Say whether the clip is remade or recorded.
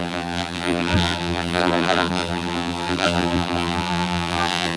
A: remade